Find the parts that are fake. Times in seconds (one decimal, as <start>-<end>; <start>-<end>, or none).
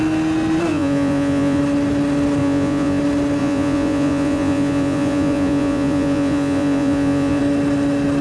0.7-1.6; 2.4-3.0; 3.4-7.4